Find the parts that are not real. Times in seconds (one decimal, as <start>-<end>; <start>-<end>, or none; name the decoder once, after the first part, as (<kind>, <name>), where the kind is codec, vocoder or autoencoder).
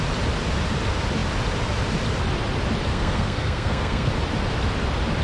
2.9-4.1 (codec, SNAC)